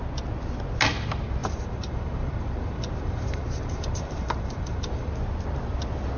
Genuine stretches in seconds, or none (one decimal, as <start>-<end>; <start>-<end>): 0.0-1.4; 5.1-6.2